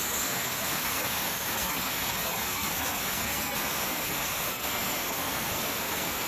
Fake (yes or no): yes